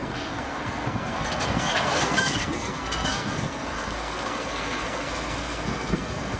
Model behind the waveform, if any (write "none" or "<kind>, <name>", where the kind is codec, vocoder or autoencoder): codec, SNAC